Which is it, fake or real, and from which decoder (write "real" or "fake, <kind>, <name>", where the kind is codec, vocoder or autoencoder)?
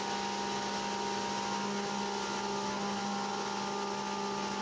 real